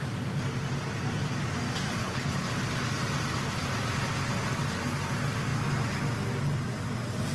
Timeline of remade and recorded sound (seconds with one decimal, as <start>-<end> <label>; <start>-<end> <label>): 0.0-2.0 recorded; 2.0-2.6 remade; 2.6-7.3 recorded